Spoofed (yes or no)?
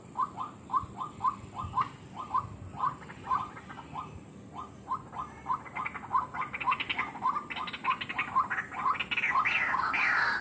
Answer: no